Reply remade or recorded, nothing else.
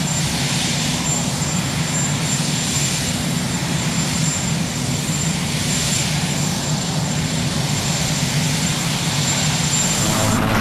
remade